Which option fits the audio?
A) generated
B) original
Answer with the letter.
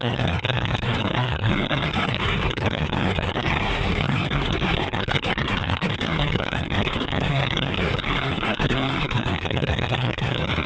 A